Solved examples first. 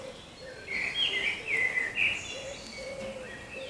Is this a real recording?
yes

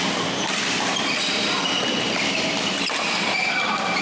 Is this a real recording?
no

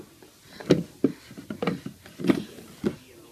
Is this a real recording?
yes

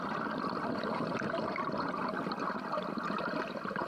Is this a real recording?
yes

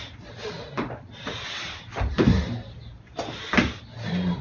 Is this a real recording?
yes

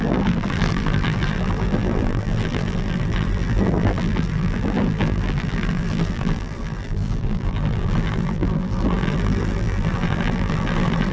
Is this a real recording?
no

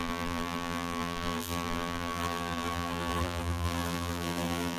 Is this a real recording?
no